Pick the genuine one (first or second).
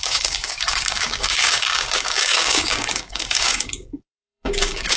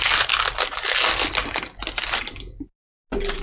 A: second